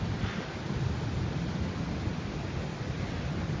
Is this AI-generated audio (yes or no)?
no